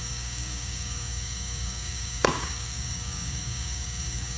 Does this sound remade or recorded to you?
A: remade